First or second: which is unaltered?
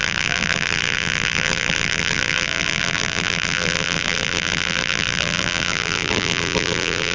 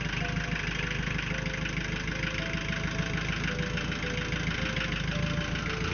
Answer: second